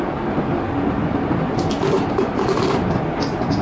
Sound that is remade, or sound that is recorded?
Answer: recorded